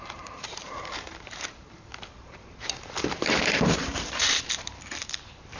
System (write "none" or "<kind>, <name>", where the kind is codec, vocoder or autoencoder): vocoder, BigVGAN v2